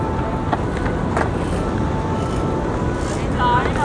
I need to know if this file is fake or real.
real